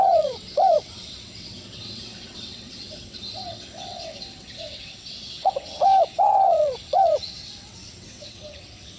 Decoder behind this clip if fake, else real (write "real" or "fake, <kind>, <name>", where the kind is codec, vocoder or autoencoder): fake, vocoder, WaveNeXt